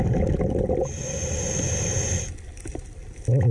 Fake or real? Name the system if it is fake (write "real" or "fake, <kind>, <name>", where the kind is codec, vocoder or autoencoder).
real